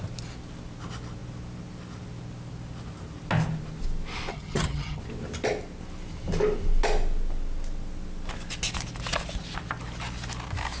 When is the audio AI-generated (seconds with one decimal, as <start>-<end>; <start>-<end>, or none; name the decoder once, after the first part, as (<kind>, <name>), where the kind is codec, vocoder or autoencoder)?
4.3-5.0 (vocoder, HiFi-GAN)